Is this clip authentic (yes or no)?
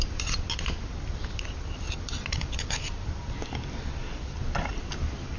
yes